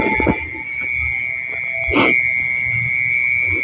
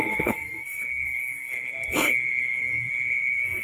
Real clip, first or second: first